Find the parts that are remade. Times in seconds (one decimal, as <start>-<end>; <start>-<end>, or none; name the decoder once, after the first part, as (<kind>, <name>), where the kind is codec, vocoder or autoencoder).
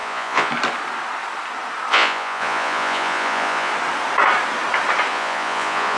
0.0-0.5 (vocoder, Vocos); 1.9-3.7; 5.1-6.0